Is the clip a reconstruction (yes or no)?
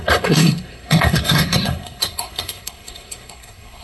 yes